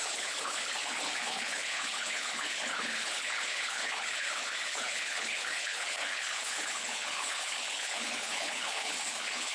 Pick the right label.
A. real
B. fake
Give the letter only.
B